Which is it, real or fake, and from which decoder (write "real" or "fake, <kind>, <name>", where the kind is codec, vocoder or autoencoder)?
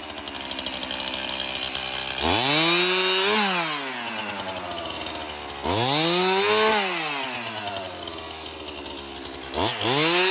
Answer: real